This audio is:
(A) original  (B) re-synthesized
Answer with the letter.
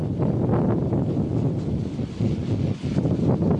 A